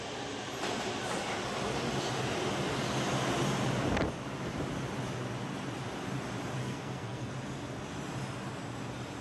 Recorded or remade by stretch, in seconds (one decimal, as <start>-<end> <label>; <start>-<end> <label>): 0.0-6.6 recorded; 6.6-7.3 remade; 7.3-9.2 recorded